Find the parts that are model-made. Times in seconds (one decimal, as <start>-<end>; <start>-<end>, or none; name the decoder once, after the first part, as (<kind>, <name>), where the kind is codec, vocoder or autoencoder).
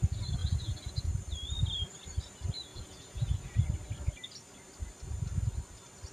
0.4-1.1 (vocoder, Vocos); 2.7-3.6